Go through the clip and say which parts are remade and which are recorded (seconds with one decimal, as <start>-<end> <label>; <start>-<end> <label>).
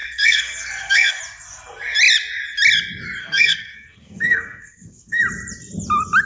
0.0-1.2 remade; 1.2-3.2 recorded; 3.2-5.2 remade; 5.2-6.3 recorded